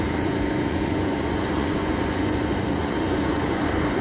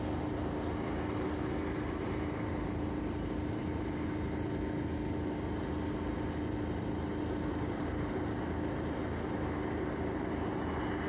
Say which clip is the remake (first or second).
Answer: first